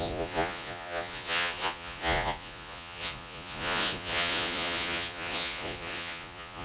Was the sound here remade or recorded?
remade